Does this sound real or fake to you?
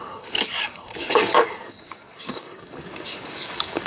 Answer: fake